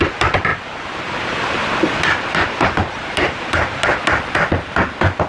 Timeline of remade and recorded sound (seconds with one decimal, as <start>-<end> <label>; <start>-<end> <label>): 0.0-0.5 recorded; 0.5-3.7 remade; 3.7-5.3 recorded